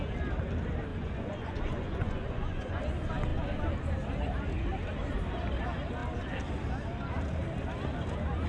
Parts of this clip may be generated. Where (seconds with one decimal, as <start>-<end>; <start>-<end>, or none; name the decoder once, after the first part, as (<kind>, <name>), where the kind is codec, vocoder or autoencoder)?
0.9-2.8 (vocoder, Vocos)